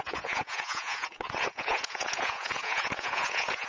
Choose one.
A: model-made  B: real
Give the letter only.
A